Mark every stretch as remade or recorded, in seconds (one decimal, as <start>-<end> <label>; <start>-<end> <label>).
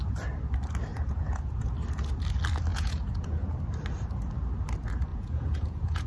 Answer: 0.0-0.9 recorded; 0.9-1.7 remade; 1.7-2.7 recorded; 2.7-3.6 remade; 3.6-5.1 recorded; 5.1-6.1 remade